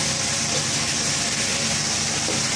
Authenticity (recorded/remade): recorded